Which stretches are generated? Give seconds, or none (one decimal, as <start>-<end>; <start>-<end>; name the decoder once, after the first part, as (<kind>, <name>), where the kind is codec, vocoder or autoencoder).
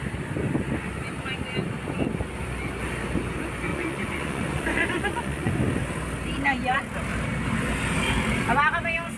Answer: 3.7-5.5 (vocoder, Vocos)